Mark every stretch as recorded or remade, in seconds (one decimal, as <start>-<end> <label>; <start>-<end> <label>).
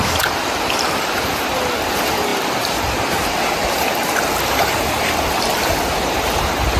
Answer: 0.0-6.8 recorded